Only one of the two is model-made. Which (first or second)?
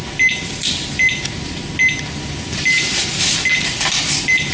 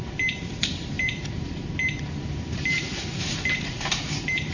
second